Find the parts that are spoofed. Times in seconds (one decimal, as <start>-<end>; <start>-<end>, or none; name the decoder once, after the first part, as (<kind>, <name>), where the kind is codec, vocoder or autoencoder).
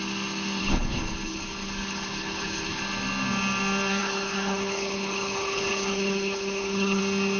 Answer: 0.6-2.8 (codec, HILCodec); 4.0-7.0